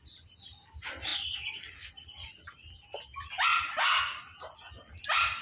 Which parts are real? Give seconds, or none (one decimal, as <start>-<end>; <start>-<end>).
0.0-5.4